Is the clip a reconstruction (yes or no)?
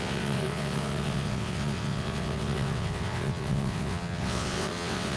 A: yes